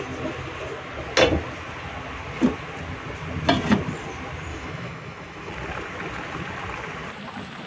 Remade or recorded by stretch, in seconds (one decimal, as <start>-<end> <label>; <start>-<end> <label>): 0.0-4.5 recorded; 4.5-5.5 remade; 5.5-7.7 recorded